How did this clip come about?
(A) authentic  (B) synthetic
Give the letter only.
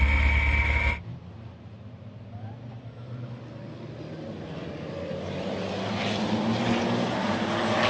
A